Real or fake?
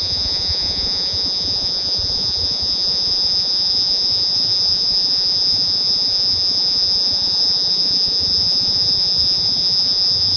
fake